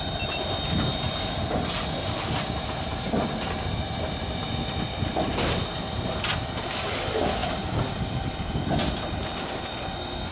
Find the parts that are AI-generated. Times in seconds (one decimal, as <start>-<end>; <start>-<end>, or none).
none